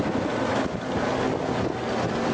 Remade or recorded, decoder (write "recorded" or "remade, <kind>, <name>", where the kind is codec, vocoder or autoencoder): recorded